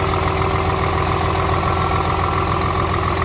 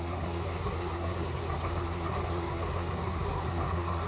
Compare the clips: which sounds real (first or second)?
first